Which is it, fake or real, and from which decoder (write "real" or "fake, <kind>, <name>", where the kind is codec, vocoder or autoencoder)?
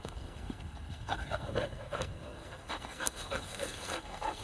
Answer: fake, codec, SNAC